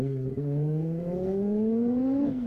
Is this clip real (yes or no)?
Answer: no